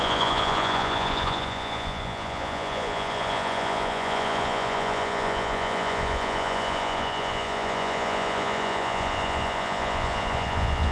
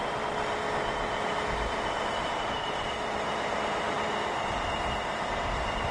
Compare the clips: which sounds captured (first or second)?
second